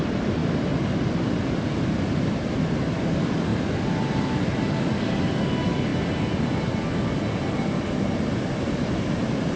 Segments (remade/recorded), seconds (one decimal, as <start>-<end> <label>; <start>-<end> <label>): 0.0-9.6 recorded